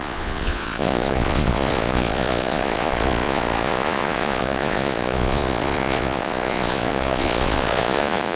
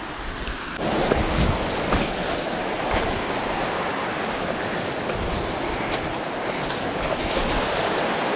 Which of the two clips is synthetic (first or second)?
first